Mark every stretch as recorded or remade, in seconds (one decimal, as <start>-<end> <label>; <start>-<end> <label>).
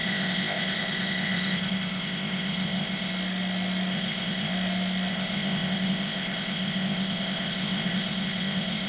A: 0.0-3.1 remade; 3.1-3.9 recorded; 3.9-4.5 remade; 4.5-5.1 recorded; 5.1-8.9 remade